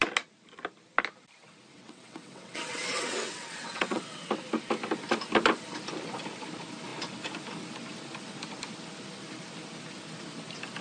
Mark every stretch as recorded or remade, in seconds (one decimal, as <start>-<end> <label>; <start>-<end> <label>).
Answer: 0.0-1.7 recorded; 1.7-4.3 remade; 4.3-10.8 recorded